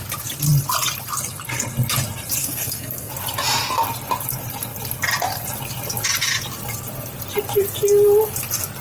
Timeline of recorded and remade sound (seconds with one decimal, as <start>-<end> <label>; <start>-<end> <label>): 0.0-2.4 recorded; 2.4-3.1 remade; 3.1-8.8 recorded